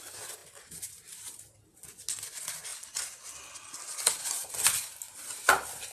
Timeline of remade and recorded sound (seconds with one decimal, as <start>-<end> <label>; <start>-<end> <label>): 0.0-5.9 recorded